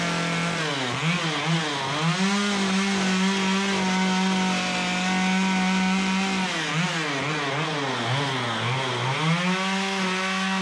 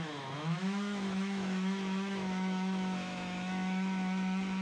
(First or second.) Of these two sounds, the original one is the first